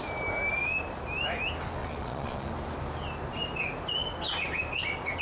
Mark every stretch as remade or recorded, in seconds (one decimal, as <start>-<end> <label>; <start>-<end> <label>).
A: 0.0-1.8 recorded; 1.8-2.5 remade; 2.5-5.2 recorded